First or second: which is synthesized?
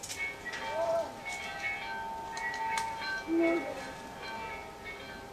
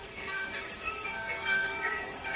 second